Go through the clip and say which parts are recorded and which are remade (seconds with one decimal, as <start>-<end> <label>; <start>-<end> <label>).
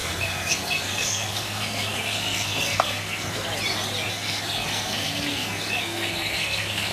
0.0-3.5 remade; 3.5-4.1 recorded; 4.1-6.9 remade